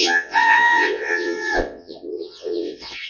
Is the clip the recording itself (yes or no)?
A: no